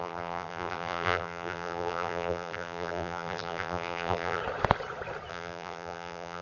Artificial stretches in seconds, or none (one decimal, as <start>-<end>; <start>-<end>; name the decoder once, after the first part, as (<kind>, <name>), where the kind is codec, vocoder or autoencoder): 0.0-4.4 (vocoder, BigVGAN v2); 5.3-6.4